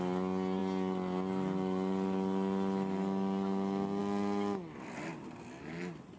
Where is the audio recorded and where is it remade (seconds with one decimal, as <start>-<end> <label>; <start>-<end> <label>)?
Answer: 0.0-6.2 recorded